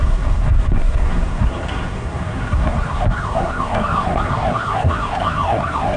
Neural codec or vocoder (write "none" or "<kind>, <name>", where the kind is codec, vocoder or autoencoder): codec, SNAC